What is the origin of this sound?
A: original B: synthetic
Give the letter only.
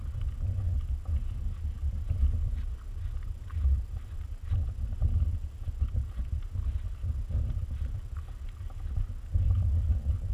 A